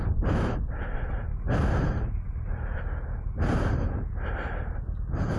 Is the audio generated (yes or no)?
no